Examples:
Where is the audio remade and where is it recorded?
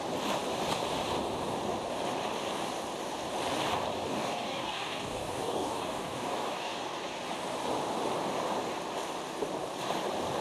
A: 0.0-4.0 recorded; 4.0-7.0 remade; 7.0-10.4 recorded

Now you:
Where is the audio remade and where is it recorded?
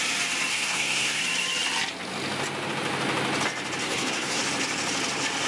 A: 0.0-0.5 recorded; 0.5-1.2 remade; 1.2-3.8 recorded; 3.8-4.4 remade; 4.4-5.5 recorded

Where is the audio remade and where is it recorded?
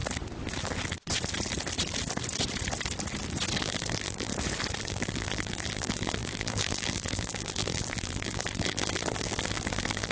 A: 0.0-3.6 recorded; 3.6-4.3 remade; 4.3-4.8 recorded; 4.8-10.1 remade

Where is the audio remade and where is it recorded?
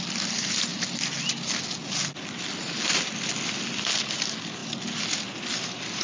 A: 0.0-6.0 recorded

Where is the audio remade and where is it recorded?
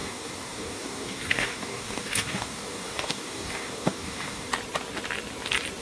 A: 0.0-4.5 remade; 4.5-5.8 recorded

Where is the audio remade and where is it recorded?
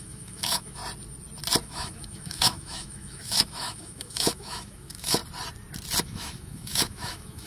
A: 0.0-0.8 remade; 0.8-1.6 recorded; 1.6-5.2 remade; 5.2-6.0 recorded; 6.0-7.5 remade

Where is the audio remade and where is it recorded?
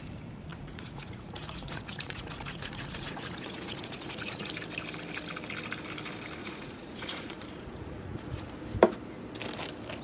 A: 0.0-0.5 recorded; 0.5-4.5 remade; 4.5-6.4 recorded; 6.4-8.5 remade; 8.5-10.0 recorded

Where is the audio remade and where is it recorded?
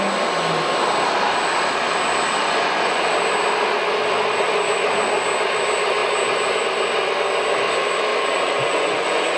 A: 0.0-2.4 recorded; 2.4-3.1 remade; 3.1-8.1 recorded; 8.1-9.4 remade